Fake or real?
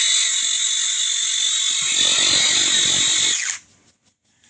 real